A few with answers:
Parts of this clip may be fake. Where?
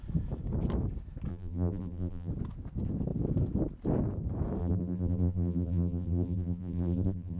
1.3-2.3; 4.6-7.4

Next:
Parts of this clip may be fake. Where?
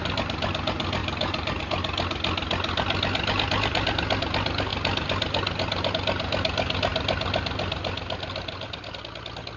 1.0-1.6